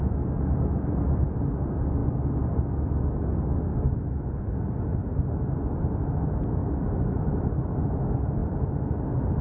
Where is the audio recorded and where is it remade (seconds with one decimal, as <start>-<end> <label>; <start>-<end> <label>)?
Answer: 0.0-6.6 recorded; 6.6-7.6 remade; 7.6-8.4 recorded; 8.4-9.4 remade